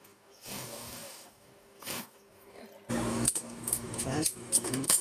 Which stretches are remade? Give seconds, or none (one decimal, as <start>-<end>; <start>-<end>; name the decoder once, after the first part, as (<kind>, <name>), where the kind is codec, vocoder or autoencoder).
0.0-2.6 (codec, DAC); 3.1-5.0

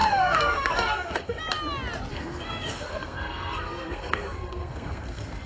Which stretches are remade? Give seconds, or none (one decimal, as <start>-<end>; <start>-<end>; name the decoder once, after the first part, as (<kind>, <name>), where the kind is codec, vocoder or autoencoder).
0.0-1.4 (codec, SNAC); 2.1-5.5

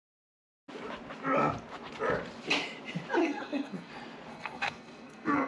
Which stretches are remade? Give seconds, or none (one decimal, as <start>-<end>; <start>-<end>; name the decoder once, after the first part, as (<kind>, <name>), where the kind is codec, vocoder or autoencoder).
3.2-3.9 (codec, SNAC); 4.3-5.5

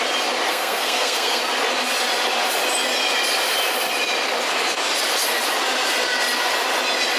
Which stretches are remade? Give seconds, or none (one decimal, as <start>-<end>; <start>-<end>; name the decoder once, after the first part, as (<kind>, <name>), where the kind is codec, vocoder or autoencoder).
0.5-1.4 (codec, SNAC)

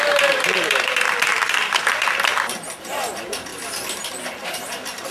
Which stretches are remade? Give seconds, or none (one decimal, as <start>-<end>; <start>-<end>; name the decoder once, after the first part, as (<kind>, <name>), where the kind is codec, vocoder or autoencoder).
0.0-3.5 (vocoder, BigVGAN v2); 4.4-5.1

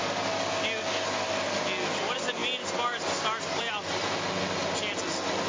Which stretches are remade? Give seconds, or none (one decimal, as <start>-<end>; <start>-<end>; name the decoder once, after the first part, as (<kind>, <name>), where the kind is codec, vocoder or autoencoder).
none

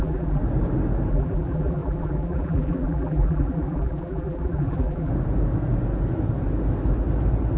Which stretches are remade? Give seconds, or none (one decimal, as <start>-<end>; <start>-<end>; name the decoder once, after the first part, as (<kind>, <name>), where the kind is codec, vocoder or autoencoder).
0.0-0.4 (vocoder, BigVGAN v2); 1.1-5.1